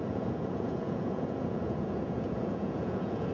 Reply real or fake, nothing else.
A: fake